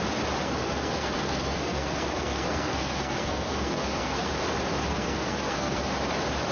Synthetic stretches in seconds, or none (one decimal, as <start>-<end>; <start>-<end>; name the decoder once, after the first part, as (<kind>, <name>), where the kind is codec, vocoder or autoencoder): 0.4-4.3 (codec, SNAC); 4.9-5.9